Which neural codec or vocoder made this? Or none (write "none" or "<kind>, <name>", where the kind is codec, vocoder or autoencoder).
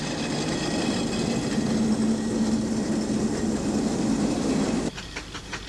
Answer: none